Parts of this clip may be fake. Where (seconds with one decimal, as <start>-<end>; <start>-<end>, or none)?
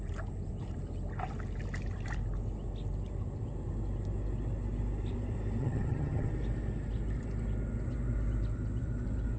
5.6-6.3